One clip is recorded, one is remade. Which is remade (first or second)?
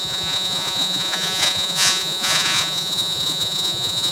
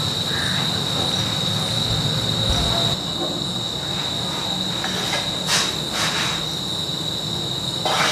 first